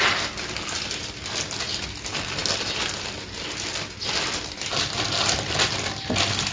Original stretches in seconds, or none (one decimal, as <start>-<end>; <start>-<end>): 0.0-6.5